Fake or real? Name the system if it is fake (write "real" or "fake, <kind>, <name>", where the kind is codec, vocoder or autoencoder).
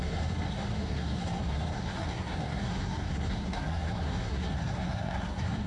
fake, codec, SNAC